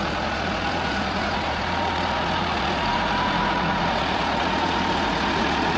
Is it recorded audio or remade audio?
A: remade